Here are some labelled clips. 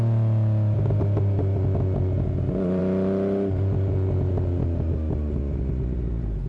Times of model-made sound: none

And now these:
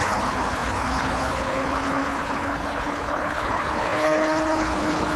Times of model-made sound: 0.0-5.2 (codec, HILCodec)

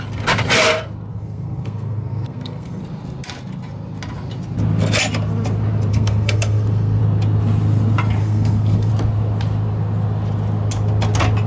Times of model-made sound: 1.1-2.8 (codec, SNAC); 5.9-7.0; 8.2-8.9

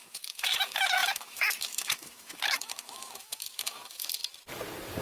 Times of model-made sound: 0.0-4.2 (autoencoder, DAC-VAE)

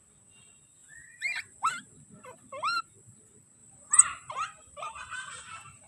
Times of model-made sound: 0.8-1.9 (vocoder, BigVGAN v2); 3.6-5.9